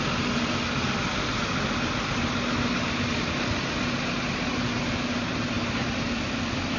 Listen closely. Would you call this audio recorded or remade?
recorded